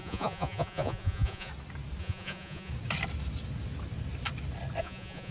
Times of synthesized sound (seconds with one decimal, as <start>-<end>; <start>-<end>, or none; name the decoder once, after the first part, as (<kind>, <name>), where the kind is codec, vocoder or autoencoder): 0.0-1.5 (vocoder, Vocos); 2.0-2.7; 4.8-5.3